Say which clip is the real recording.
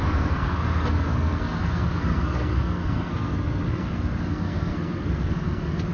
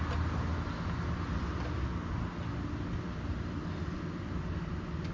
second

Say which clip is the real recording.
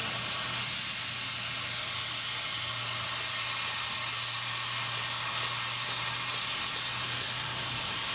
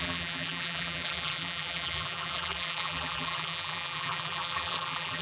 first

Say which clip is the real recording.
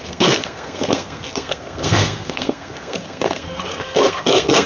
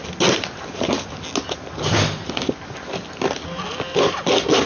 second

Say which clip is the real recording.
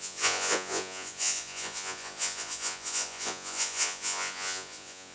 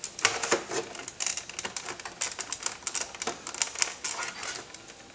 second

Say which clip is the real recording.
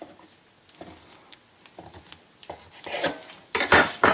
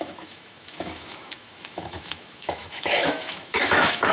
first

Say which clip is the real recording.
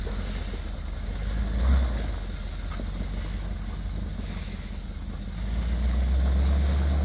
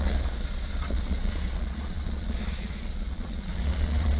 first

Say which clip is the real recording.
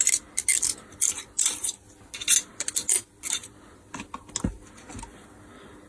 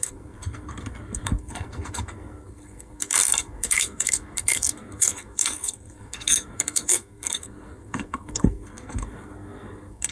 first